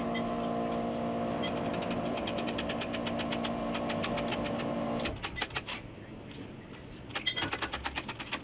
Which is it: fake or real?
real